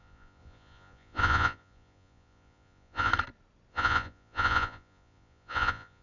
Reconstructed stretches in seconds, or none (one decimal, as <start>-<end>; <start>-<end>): 0.0-3.1; 3.7-6.0